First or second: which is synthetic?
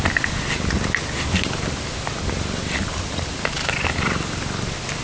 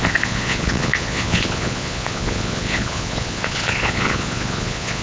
second